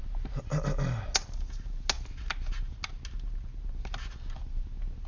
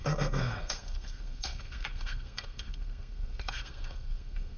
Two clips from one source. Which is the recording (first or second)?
first